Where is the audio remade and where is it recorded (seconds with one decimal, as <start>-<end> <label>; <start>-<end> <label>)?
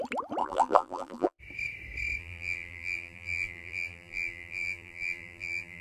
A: 0.0-0.4 recorded; 0.4-1.4 remade; 1.4-2.2 recorded; 2.2-5.8 remade